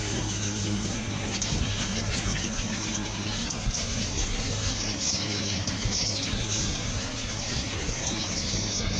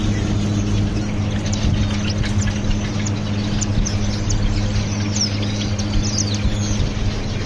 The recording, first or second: second